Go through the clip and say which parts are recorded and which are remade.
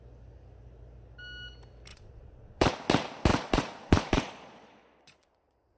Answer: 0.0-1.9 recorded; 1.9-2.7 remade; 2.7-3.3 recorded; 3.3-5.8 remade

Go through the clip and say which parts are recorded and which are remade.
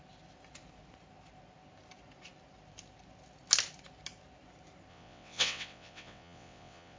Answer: 0.0-4.9 recorded; 4.9-7.0 remade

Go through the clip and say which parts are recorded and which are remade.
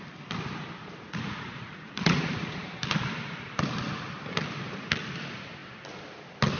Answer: 0.0-0.8 recorded; 0.8-2.7 remade; 2.7-6.6 recorded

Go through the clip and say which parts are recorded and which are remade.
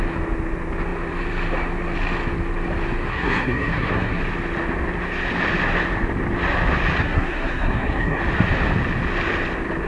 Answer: 0.0-3.1 recorded; 3.1-4.2 remade; 4.2-7.0 recorded; 7.0-8.2 remade; 8.2-9.9 recorded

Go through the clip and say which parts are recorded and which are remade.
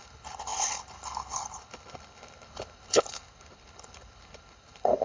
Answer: 0.0-5.0 remade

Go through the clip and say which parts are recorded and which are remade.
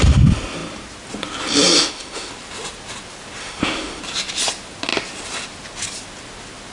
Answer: 0.0-1.8 recorded; 1.8-2.3 remade; 2.3-3.4 recorded; 3.4-4.0 remade; 4.0-6.7 recorded